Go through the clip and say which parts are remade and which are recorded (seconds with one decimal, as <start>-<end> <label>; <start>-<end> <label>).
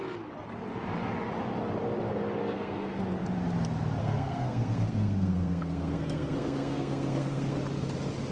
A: 0.0-2.4 recorded; 2.4-3.0 remade; 3.0-4.0 recorded; 4.0-7.6 remade; 7.6-8.3 recorded